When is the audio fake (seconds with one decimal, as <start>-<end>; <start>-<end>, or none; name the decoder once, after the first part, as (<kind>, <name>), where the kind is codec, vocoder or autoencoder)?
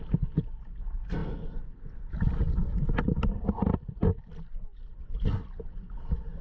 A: none